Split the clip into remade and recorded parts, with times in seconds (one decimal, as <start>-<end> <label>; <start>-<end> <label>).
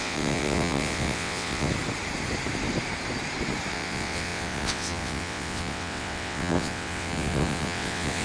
0.0-1.7 remade; 1.7-3.7 recorded; 3.7-8.2 remade